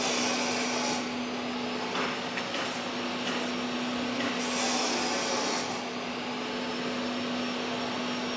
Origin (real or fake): real